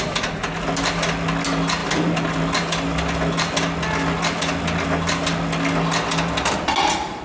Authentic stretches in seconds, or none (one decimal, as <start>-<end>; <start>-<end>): 0.0-7.2